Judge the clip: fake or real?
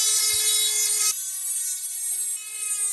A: real